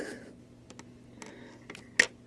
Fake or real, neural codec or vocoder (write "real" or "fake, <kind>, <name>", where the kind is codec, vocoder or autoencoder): real